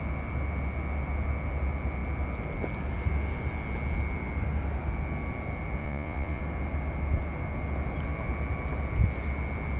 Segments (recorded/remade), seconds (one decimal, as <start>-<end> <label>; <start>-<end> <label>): 0.0-5.8 recorded; 5.8-6.4 remade; 6.4-9.8 recorded